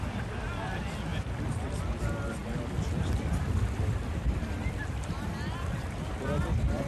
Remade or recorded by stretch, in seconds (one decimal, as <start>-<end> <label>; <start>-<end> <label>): 0.0-1.1 recorded; 1.1-1.8 remade; 1.8-6.9 recorded